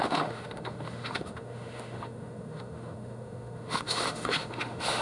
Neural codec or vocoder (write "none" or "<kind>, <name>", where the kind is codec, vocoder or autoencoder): autoencoder, DAC-VAE